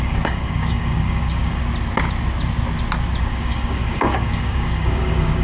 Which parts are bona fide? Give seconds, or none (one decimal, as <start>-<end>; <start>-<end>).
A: 1.6-3.2